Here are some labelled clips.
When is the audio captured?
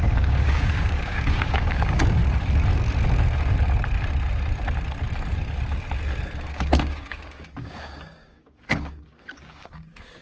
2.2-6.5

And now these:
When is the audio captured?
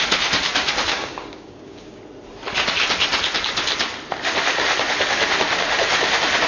0.0-0.9; 2.0-6.5